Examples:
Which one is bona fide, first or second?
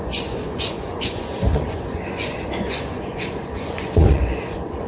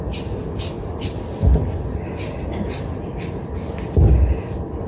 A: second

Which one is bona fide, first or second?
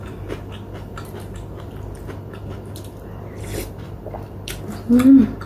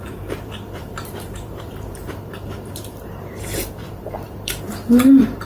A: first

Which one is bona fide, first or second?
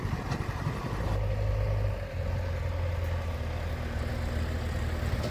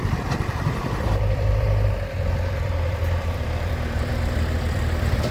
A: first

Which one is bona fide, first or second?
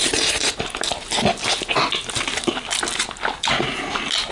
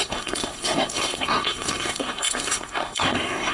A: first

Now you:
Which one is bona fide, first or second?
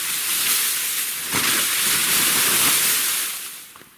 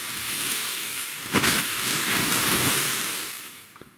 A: first